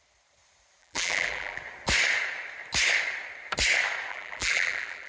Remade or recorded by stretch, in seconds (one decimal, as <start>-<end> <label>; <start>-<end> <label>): 0.0-0.8 recorded; 0.8-1.6 remade; 1.6-4.1 recorded; 4.1-5.1 remade